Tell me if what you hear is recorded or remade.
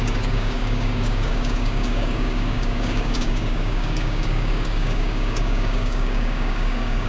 remade